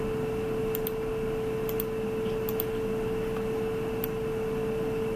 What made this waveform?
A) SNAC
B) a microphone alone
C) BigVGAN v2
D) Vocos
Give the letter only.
B